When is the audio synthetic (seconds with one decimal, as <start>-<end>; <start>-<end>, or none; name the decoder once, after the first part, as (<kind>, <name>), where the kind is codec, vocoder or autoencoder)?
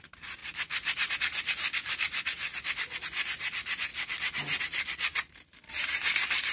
0.0-2.5 (vocoder, BigVGAN v2); 3.4-3.9; 4.6-6.5